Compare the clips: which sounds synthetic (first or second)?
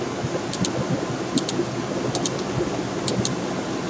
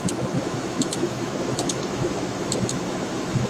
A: second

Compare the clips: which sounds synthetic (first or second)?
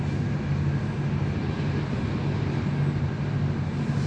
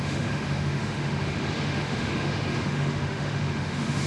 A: second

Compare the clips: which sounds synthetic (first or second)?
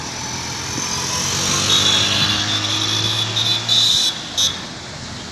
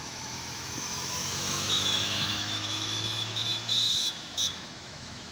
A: second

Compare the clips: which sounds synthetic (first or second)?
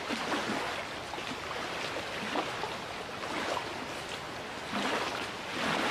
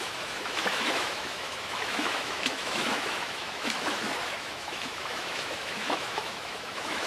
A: second